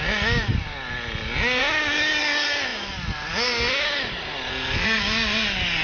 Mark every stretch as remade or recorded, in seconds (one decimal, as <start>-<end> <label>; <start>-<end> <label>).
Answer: 0.0-4.5 recorded; 4.5-5.0 remade; 5.0-5.8 recorded